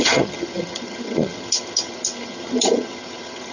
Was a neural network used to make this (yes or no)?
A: yes